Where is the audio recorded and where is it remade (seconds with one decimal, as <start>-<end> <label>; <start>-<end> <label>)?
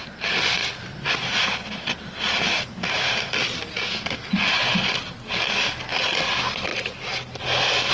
0.0-7.9 recorded